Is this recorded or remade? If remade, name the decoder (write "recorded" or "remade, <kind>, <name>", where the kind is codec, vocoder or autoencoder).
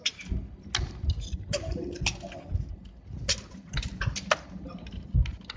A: recorded